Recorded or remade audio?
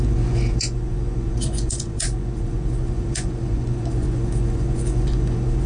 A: remade